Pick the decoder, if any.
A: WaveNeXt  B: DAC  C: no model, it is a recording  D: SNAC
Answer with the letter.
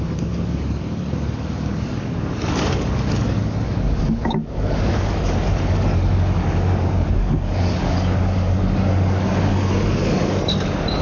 B